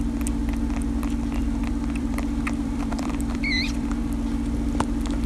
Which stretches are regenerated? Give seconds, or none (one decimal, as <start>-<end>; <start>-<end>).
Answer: 1.4-4.0